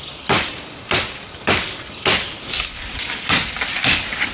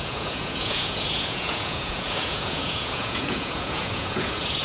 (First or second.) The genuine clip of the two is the first